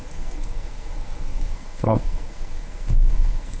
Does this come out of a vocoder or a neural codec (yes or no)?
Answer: yes